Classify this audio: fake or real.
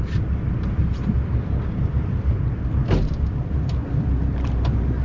real